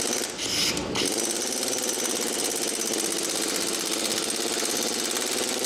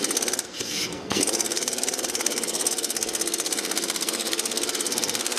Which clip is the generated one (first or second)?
second